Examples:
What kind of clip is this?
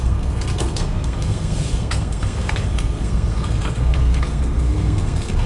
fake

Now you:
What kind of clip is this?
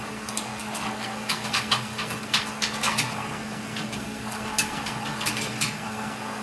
fake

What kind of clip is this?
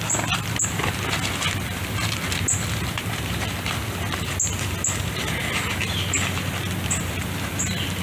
real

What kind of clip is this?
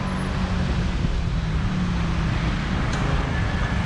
real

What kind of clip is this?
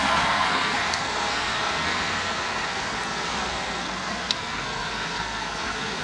fake